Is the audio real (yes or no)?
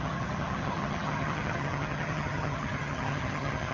no